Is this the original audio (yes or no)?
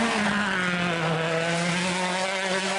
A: yes